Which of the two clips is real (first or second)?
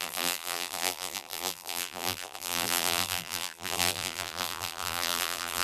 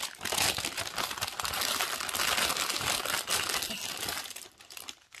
second